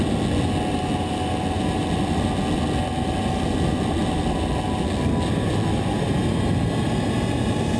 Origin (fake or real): real